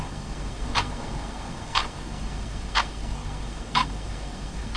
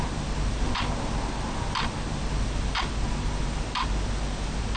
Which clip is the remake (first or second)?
first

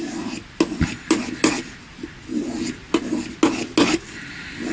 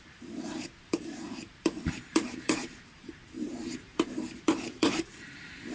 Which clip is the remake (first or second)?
second